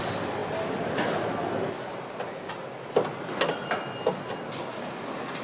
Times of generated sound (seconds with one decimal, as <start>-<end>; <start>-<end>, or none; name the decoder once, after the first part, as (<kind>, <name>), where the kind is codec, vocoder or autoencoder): none